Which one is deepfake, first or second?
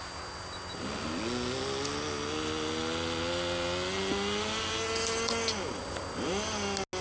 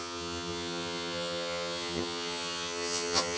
second